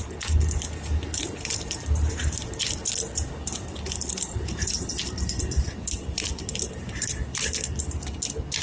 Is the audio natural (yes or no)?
yes